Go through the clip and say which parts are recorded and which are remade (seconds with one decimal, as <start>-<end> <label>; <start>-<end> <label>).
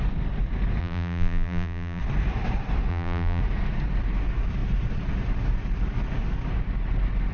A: 0.0-0.8 recorded; 0.8-2.0 remade; 2.0-2.9 recorded; 2.9-3.4 remade; 3.4-7.3 recorded